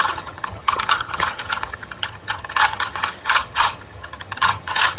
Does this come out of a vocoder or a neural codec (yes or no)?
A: yes